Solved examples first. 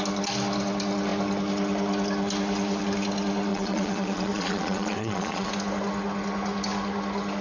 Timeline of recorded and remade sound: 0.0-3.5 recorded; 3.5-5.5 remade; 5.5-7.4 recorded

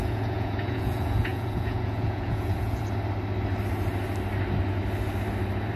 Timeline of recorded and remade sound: 0.0-2.8 remade; 2.8-5.8 recorded

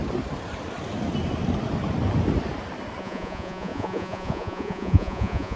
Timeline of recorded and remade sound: 0.0-3.0 recorded; 3.0-5.6 remade

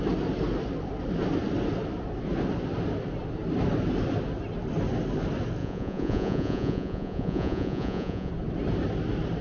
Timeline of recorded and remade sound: 0.0-5.6 recorded; 5.6-8.3 remade; 8.3-9.4 recorded

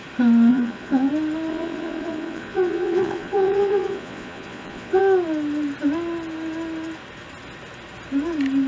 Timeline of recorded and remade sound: 0.0-0.5 recorded; 0.5-1.1 remade; 1.1-1.5 recorded; 1.5-5.0 remade; 5.0-8.7 recorded

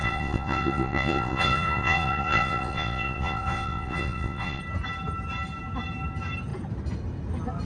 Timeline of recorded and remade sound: 0.0-4.6 remade; 4.6-7.6 recorded

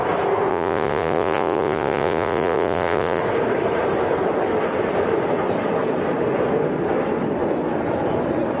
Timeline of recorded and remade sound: 0.0-0.5 recorded; 0.5-3.2 remade; 3.2-8.6 recorded

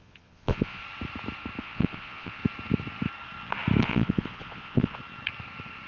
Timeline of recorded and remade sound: 0.0-0.8 remade; 0.8-1.6 recorded; 1.6-2.4 remade; 2.4-3.8 recorded; 3.8-5.0 remade; 5.0-5.9 recorded